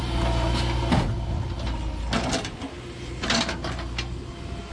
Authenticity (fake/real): real